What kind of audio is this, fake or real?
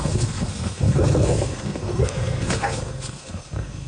fake